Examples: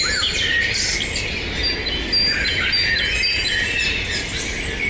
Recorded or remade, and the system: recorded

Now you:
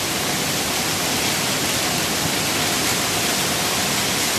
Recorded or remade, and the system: recorded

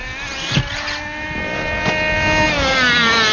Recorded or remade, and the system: recorded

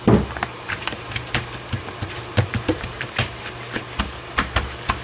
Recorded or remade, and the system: recorded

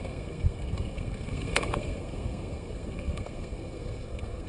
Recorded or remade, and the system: remade, codec, SNAC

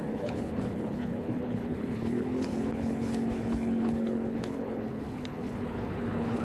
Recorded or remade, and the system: remade, codec, HILCodec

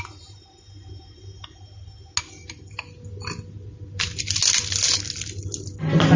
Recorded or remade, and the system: recorded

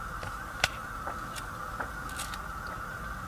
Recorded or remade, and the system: recorded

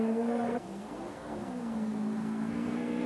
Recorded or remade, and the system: remade, codec, SNAC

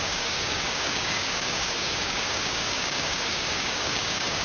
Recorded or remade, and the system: remade, codec, DAC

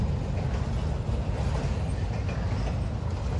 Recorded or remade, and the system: recorded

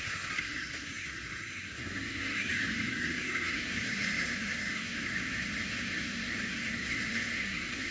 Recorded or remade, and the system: remade, codec, SNAC